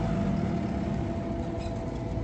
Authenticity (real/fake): real